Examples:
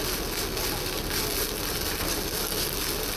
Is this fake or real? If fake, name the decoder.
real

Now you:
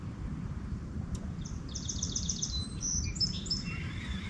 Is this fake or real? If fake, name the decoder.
fake, vocoder, BigVGAN v2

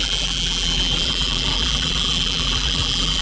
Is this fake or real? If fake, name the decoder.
fake, vocoder, BigVGAN v2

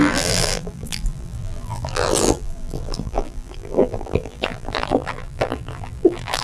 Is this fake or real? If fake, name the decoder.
fake, vocoder, BigVGAN v2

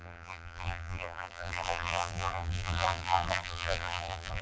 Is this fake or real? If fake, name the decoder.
fake, vocoder, BigVGAN v2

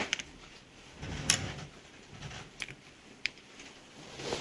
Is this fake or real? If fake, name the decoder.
fake, vocoder, BigVGAN v2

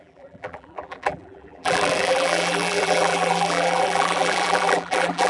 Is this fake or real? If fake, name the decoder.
fake, vocoder, BigVGAN v2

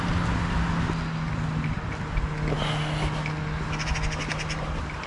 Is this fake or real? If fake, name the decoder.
real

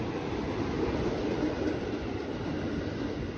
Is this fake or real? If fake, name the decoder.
real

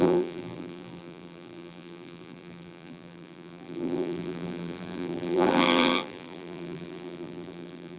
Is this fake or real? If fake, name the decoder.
fake, vocoder, BigVGAN v2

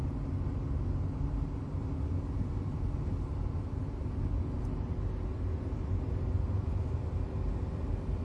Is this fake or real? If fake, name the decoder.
real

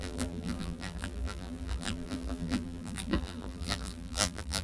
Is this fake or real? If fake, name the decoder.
fake, vocoder, BigVGAN v2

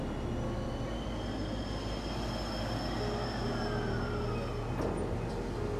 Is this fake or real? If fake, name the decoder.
real